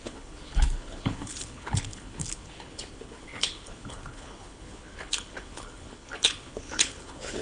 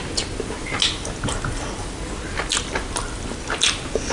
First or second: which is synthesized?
first